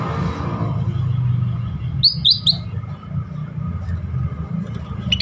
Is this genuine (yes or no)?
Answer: yes